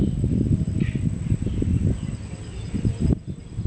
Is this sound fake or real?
real